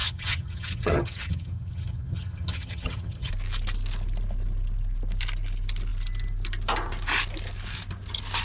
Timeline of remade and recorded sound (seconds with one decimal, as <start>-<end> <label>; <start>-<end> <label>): 0.0-3.3 remade; 3.3-8.4 recorded